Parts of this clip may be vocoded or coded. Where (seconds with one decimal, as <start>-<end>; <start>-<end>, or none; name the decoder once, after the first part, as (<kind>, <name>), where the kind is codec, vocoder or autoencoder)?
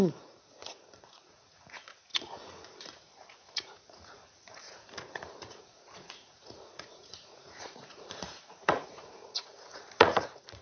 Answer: 0.0-10.6 (vocoder, Vocos)